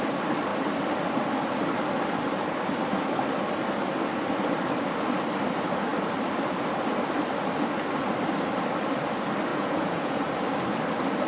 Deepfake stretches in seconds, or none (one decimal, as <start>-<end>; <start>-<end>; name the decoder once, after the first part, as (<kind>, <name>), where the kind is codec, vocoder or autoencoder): 9.5-10.3 (vocoder, Vocos)